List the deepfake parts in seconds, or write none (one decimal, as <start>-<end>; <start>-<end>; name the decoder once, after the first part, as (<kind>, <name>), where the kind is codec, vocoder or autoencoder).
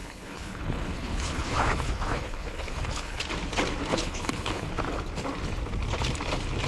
0.0-3.2 (codec, HILCodec); 3.9-4.7